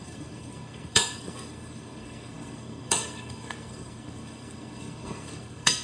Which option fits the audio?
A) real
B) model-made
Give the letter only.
B